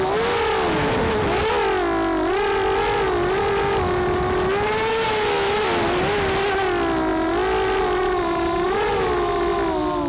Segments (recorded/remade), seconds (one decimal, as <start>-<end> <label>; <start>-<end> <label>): 0.0-10.1 recorded